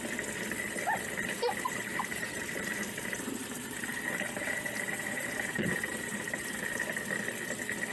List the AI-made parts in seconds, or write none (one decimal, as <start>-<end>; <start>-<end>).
1.9-6.6